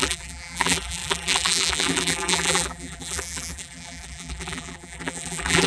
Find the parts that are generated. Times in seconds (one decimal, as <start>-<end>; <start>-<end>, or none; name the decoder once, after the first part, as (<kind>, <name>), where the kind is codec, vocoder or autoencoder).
0.0-5.7 (vocoder, BigVGAN v2)